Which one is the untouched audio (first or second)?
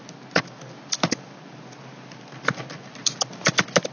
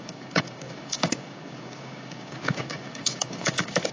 first